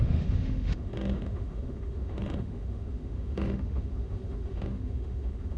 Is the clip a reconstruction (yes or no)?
yes